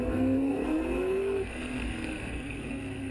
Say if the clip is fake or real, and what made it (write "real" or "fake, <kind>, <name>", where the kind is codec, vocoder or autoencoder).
fake, codec, SNAC